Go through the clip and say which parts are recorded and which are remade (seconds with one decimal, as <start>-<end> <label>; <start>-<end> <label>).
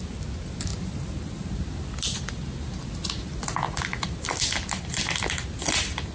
0.0-6.1 recorded